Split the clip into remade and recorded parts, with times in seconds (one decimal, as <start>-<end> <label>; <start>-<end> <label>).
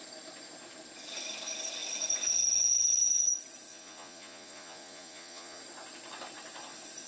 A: 0.0-3.7 recorded; 3.7-5.6 remade; 5.6-7.1 recorded